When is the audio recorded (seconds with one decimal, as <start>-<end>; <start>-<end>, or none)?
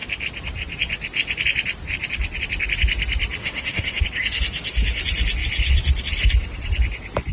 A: 0.0-3.4; 4.0-7.3